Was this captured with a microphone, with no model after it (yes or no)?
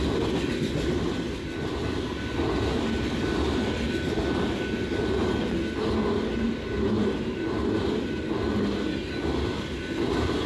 yes